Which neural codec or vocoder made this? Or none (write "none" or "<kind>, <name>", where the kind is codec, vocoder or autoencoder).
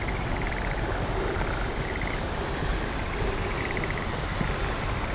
none